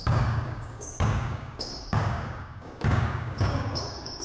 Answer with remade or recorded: remade